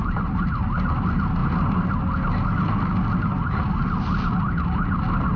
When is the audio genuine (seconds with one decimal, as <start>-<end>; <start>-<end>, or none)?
0.7-5.4